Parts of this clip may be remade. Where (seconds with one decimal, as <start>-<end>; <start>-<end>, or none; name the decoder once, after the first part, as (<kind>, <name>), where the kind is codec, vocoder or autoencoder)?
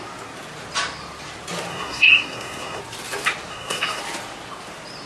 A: 1.7-2.8 (codec, SNAC); 3.5-4.0